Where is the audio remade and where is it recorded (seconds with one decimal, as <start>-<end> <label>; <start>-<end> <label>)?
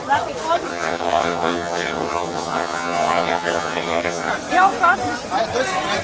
0.0-0.7 recorded; 0.7-4.3 remade; 4.3-6.0 recorded